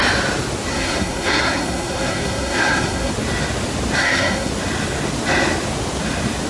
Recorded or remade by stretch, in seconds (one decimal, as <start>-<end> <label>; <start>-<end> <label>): 0.0-0.7 recorded; 0.7-3.1 remade; 3.1-4.0 recorded; 4.0-4.5 remade; 4.5-6.5 recorded